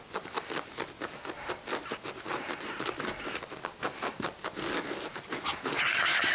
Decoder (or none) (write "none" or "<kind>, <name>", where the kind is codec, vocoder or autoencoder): none